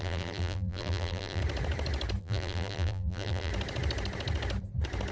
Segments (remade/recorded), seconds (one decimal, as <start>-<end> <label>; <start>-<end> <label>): 0.0-1.4 remade; 1.4-2.2 recorded; 2.2-3.5 remade; 3.5-5.1 recorded